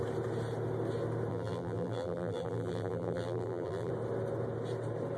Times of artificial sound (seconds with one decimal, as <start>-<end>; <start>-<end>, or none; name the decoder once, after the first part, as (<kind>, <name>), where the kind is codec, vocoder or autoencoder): 1.3-3.9 (vocoder, BigVGAN v2)